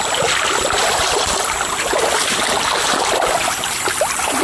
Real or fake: real